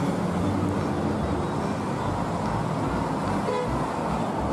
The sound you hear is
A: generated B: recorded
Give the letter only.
B